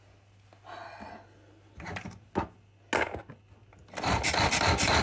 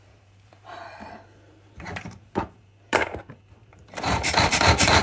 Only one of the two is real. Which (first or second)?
first